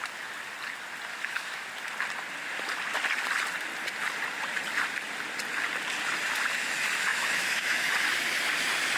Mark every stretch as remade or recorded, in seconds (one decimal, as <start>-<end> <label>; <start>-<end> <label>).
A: 0.0-1.1 recorded; 1.1-1.7 remade; 1.7-7.1 recorded; 7.1-7.9 remade; 7.9-9.0 recorded